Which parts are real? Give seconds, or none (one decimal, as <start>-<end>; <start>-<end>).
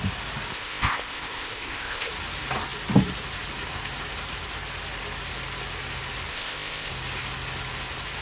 0.0-0.5; 2.1-6.3; 6.9-8.2